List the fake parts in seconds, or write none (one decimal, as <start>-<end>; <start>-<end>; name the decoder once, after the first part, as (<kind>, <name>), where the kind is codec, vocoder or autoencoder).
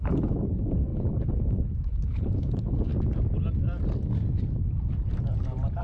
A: 0.0-2.9 (codec, HILCodec)